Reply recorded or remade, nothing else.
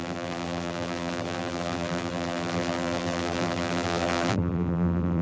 remade